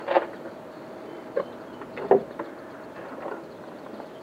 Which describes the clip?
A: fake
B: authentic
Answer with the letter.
B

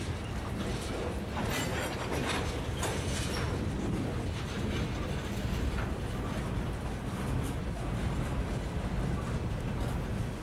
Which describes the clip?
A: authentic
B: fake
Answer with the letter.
A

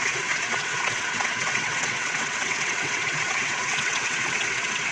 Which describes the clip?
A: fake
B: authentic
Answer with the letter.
A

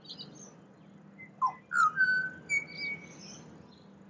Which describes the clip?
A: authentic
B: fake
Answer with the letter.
A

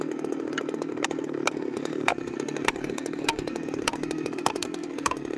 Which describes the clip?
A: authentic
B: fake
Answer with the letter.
B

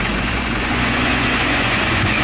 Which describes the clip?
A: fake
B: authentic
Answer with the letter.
A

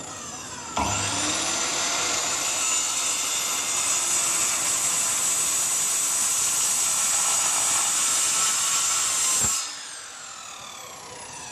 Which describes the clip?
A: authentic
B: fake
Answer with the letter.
A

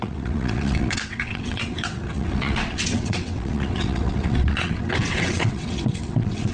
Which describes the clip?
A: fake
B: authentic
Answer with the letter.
A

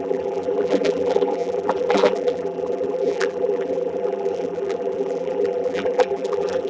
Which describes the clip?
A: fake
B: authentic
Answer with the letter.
A